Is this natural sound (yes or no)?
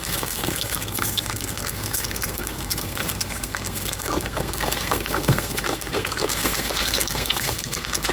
no